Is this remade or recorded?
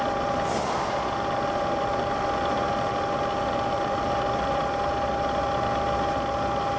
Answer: recorded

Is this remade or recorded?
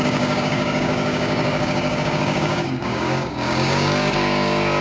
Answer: remade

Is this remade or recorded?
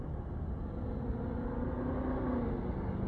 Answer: recorded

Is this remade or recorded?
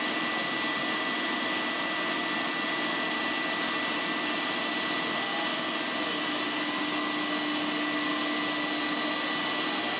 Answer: recorded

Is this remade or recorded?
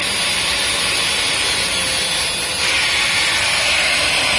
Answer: recorded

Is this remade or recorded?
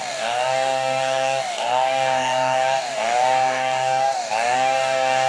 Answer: remade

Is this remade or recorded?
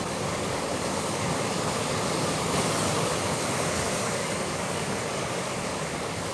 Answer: remade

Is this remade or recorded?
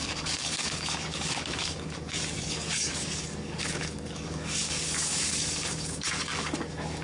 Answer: remade